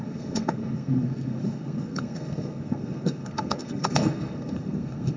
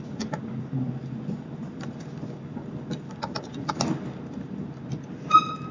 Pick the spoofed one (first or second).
first